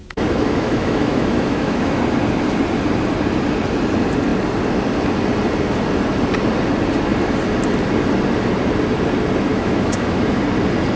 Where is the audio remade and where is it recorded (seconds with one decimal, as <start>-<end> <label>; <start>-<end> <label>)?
0.0-2.0 remade; 2.0-9.5 recorded; 9.5-10.4 remade; 10.4-11.0 recorded